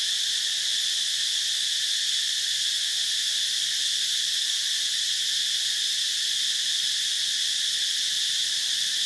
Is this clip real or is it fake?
real